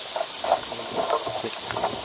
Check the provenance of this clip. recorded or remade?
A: recorded